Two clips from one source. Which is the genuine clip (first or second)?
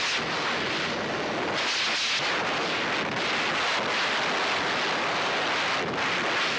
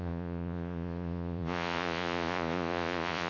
first